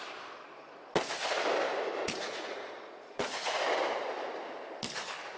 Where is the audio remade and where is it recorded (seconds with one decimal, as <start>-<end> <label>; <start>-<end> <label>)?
0.0-2.0 recorded; 2.0-3.6 remade; 3.6-5.4 recorded